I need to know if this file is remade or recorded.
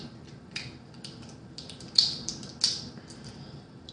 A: recorded